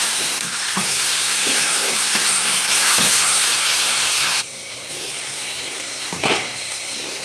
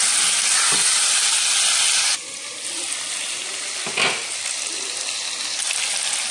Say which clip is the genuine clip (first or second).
second